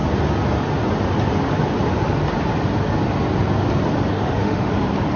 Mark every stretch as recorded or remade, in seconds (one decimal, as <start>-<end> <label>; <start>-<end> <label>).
0.0-4.1 recorded; 4.1-4.7 remade; 4.7-5.2 recorded